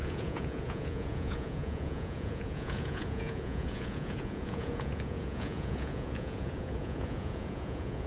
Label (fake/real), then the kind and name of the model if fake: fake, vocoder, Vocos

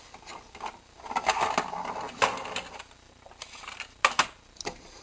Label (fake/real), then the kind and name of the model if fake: real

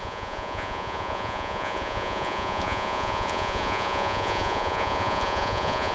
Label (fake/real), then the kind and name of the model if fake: fake, vocoder, Vocos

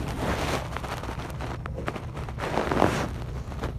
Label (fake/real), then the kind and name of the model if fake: real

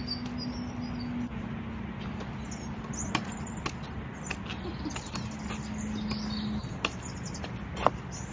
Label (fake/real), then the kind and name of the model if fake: real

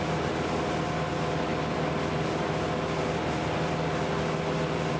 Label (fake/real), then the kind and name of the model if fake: real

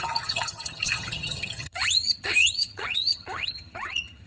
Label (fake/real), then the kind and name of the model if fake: fake, vocoder, HiFi-GAN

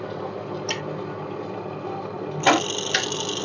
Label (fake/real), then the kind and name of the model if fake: real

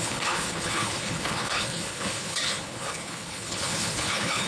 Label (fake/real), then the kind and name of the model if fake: fake, codec, HILCodec